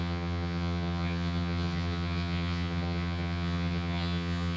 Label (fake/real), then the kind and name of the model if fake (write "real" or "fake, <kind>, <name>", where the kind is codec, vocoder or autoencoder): fake, vocoder, HiFi-GAN